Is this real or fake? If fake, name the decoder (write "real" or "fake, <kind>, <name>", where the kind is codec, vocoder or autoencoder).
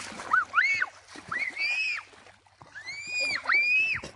real